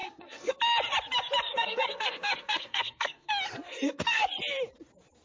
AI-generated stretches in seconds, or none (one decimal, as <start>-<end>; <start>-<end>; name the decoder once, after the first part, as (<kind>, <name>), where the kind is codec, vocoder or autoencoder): 0.0-0.6 (codec, SNAC); 1.5-3.3; 3.7-4.2